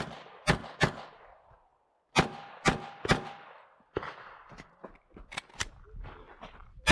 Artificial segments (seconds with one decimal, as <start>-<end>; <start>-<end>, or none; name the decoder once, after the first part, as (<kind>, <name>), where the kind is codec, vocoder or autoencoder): none